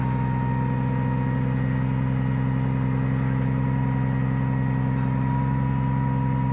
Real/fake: real